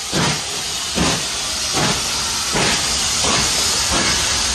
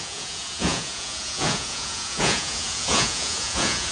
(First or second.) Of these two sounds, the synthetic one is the second